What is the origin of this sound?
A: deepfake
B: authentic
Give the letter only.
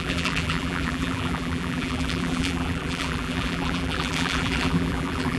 A